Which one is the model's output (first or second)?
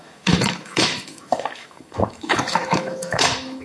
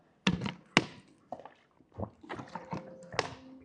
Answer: first